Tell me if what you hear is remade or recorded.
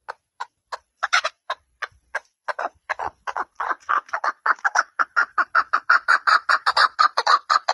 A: remade